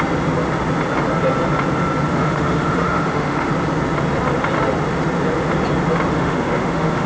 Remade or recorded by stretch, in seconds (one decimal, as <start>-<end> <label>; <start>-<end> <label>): 0.0-2.1 recorded; 2.1-3.5 remade; 3.5-6.1 recorded; 6.1-7.1 remade